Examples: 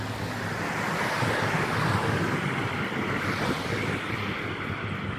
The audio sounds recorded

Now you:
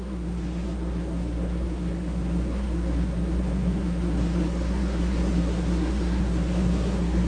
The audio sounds remade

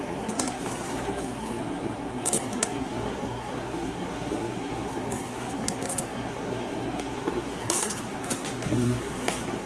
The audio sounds remade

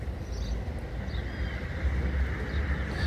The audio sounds recorded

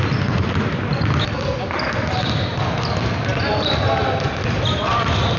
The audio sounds recorded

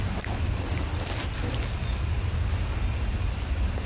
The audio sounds recorded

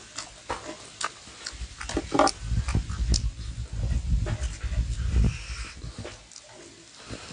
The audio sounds recorded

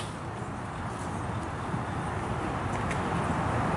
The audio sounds recorded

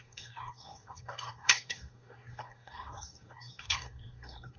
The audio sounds remade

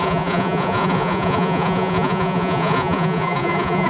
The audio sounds remade